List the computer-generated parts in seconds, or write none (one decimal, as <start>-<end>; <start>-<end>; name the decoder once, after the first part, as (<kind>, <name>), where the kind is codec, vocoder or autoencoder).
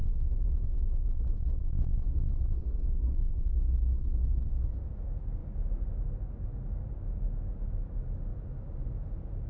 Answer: 5.4-6.0 (codec, DAC)